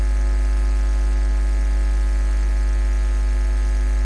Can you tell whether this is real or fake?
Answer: real